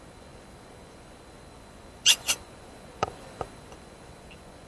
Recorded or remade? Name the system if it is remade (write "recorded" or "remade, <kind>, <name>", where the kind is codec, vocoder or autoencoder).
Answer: remade, vocoder, Vocos